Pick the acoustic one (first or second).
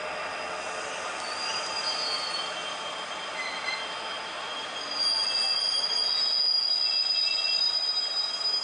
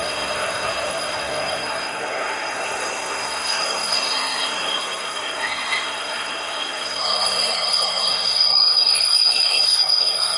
first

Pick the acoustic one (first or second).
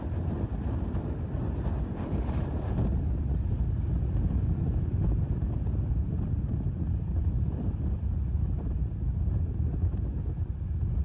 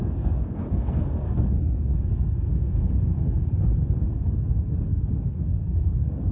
first